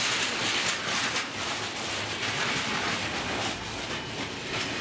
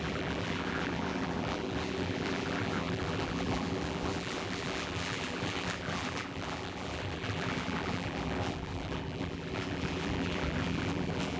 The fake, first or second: second